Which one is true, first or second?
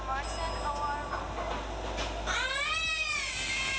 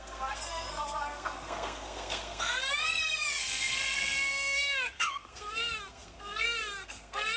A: first